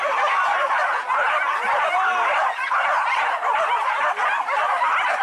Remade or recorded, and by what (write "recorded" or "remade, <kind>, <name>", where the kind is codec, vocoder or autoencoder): recorded